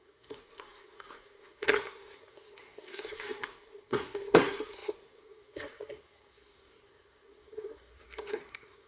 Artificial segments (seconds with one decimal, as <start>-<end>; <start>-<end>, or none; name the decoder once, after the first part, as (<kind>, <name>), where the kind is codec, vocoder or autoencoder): 0.0-8.9 (codec, SNAC)